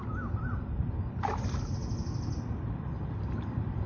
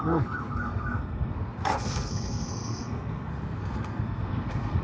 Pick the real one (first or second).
first